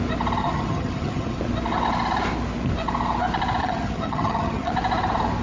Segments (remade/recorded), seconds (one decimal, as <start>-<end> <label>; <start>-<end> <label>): 0.0-0.4 recorded; 0.4-1.4 remade; 1.4-3.6 recorded; 3.6-4.7 remade; 4.7-5.4 recorded